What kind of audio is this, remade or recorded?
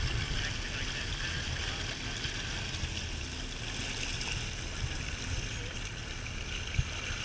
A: recorded